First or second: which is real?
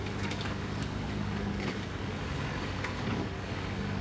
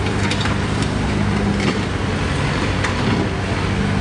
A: second